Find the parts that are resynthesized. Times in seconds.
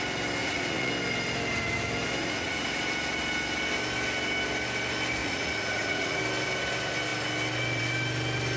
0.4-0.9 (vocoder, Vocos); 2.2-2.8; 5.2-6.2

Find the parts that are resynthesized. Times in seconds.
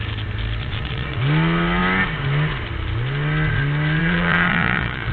0.6-1.2 (vocoder, Vocos); 4.0-5.1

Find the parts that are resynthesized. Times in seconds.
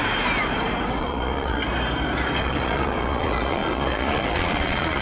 1.0-1.6 (vocoder, Vocos); 2.4-5.0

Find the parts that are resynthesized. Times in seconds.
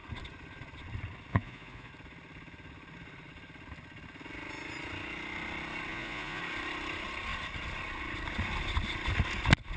1.3-1.9 (vocoder, Vocos); 5.9-6.4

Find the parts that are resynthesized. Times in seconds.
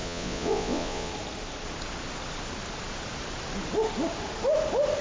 0.0-1.1 (vocoder, Vocos)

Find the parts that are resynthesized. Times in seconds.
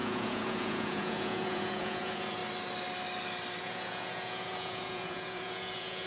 0.0-2.4 (vocoder, Vocos); 3.6-6.1